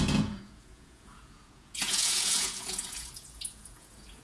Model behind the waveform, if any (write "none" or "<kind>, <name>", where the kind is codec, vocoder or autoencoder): vocoder, Vocos